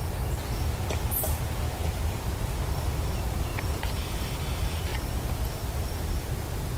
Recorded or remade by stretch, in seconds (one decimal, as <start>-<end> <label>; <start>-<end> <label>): 0.0-3.5 recorded; 3.5-4.4 remade; 4.4-4.9 recorded; 4.9-6.1 remade; 6.1-6.8 recorded